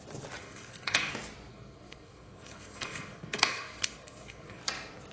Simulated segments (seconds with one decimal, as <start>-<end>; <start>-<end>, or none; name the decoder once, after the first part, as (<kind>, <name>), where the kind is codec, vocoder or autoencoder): 0.4-1.1 (codec, SNAC); 1.5-4.6